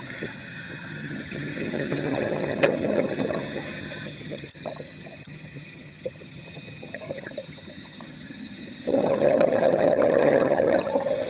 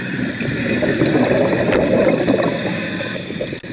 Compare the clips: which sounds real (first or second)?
second